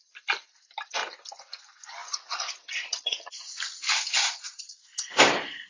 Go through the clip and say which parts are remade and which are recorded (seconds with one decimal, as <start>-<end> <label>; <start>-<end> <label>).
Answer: 0.0-2.0 recorded; 2.0-3.7 remade; 3.7-5.7 recorded